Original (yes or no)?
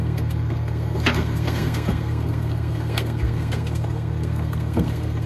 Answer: no